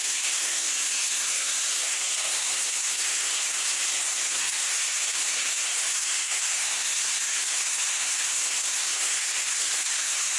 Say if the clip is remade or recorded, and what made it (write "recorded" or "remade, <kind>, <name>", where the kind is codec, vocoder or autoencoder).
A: remade, codec, SNAC